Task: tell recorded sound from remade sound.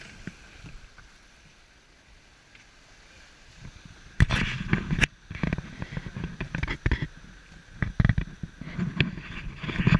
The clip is recorded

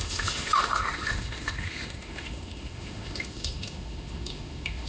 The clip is remade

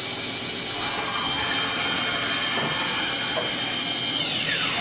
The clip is recorded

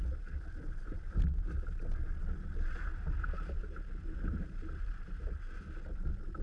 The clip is recorded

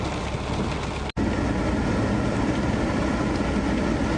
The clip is recorded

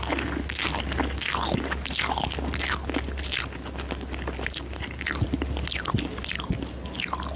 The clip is recorded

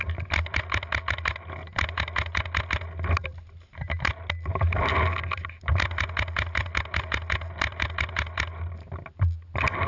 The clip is recorded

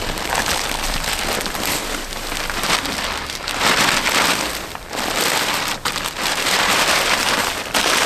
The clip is recorded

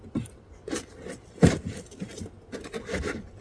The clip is recorded